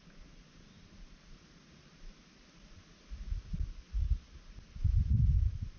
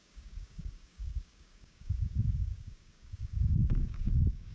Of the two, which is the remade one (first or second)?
second